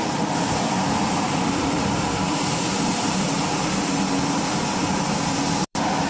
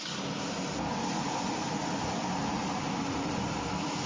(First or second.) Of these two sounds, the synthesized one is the first